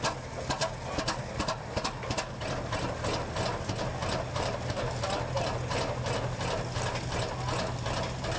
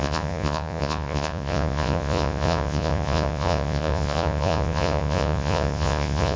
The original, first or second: first